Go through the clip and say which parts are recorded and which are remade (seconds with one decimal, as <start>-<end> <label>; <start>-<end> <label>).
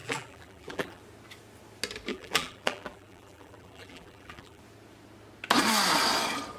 0.0-1.0 remade; 1.0-2.1 recorded; 2.1-4.6 remade; 4.6-6.6 recorded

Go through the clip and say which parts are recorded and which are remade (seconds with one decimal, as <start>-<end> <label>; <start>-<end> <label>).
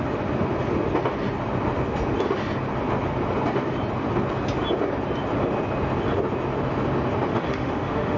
0.0-7.3 recorded; 7.3-8.2 remade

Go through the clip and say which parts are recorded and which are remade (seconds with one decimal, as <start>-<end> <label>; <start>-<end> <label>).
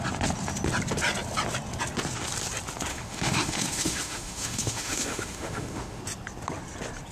0.0-2.9 recorded; 2.9-6.0 remade; 6.0-7.1 recorded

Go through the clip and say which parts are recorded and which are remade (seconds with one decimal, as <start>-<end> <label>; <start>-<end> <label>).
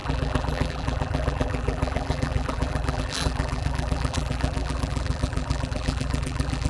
0.0-6.7 remade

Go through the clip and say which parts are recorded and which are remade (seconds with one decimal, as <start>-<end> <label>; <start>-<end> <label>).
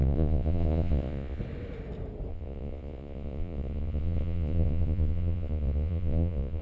0.0-1.4 remade; 1.4-2.3 recorded; 2.3-6.6 remade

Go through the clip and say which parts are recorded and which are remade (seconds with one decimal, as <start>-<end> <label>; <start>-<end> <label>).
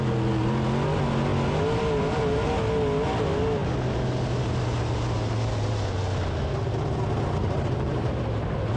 0.0-7.4 recorded; 7.4-8.2 remade; 8.2-8.8 recorded